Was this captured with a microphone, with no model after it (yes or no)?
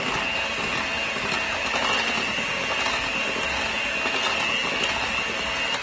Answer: yes